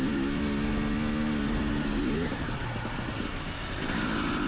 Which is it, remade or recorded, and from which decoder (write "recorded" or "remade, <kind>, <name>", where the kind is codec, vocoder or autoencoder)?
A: recorded